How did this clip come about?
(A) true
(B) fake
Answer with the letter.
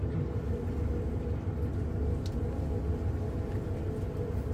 A